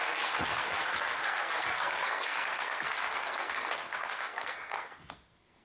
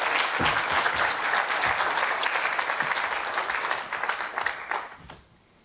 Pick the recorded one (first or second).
second